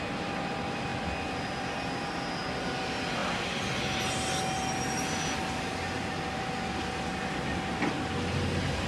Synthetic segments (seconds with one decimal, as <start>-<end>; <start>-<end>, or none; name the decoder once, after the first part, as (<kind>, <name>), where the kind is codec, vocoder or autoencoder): none